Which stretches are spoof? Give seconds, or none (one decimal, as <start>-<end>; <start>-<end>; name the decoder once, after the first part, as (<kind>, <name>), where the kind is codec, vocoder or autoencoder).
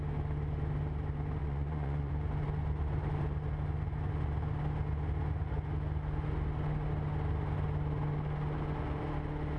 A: 1.4-2.1 (vocoder, Vocos)